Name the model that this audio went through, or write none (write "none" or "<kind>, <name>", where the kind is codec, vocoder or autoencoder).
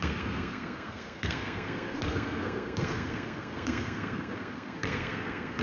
codec, SNAC